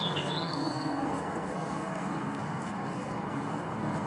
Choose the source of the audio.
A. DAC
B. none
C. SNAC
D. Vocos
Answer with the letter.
C